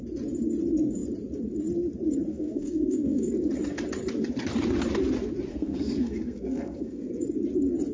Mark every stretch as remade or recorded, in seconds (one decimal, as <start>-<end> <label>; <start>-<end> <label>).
0.0-2.3 recorded; 2.3-3.3 remade; 3.3-5.5 recorded; 5.5-7.1 remade; 7.1-7.9 recorded